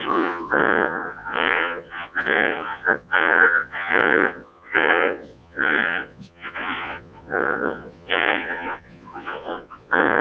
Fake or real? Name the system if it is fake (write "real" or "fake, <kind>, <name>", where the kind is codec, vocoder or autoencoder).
fake, vocoder, Vocos